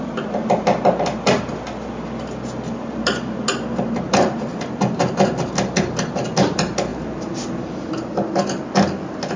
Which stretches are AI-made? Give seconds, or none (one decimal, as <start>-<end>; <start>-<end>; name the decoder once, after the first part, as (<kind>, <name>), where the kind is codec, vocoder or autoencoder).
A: none